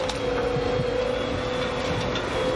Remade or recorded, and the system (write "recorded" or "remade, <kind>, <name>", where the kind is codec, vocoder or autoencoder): recorded